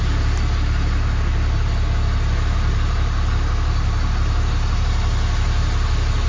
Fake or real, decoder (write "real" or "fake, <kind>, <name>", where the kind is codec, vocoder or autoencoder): real